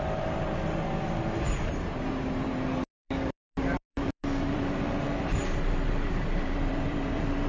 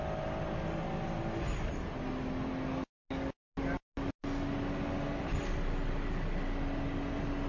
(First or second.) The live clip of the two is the second